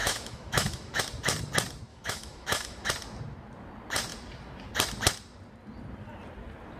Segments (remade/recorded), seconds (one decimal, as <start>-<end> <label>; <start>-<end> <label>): 0.0-1.0 remade; 1.0-1.9 recorded; 1.9-2.9 remade; 2.9-6.8 recorded